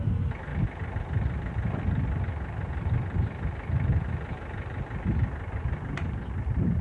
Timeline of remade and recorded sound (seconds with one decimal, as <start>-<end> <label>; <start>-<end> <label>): 0.0-6.8 recorded